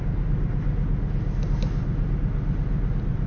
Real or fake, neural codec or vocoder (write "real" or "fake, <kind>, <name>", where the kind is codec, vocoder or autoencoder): real